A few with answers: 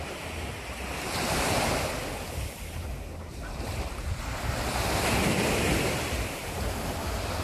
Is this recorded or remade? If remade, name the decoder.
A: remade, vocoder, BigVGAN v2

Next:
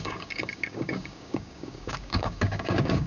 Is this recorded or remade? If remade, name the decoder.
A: remade, codec, DAC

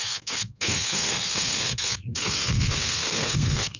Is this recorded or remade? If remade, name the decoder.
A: remade, codec, SNAC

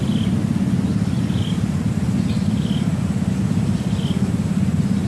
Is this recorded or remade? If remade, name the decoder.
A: recorded